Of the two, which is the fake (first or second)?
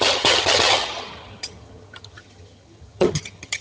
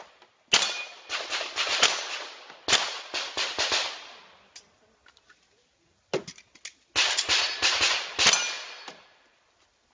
first